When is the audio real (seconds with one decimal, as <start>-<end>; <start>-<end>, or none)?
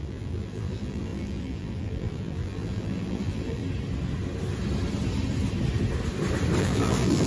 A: 3.6-6.6